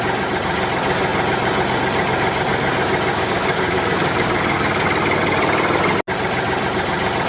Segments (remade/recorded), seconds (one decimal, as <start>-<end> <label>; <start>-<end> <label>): 0.0-3.1 recorded; 3.1-4.6 remade; 4.6-7.3 recorded

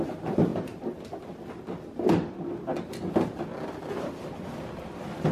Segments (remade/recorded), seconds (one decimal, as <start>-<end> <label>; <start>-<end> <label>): 0.0-5.3 recorded

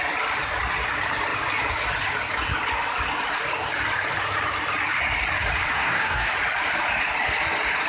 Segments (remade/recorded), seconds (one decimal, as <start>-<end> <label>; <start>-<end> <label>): 0.0-5.7 recorded; 5.7-6.3 remade; 6.3-7.9 recorded

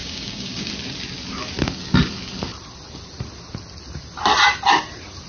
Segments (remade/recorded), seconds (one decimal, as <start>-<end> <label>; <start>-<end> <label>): 0.0-0.7 remade; 0.7-5.3 recorded

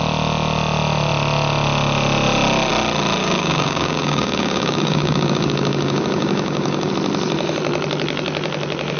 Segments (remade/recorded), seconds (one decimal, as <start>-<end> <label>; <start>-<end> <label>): 0.0-3.2 recorded; 3.2-6.9 remade; 6.9-9.0 recorded

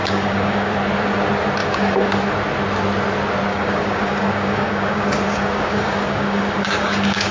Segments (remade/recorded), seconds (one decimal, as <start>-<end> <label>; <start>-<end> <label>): 0.0-0.7 remade; 0.7-1.6 recorded; 1.6-2.1 remade; 2.1-3.5 recorded; 3.5-7.3 remade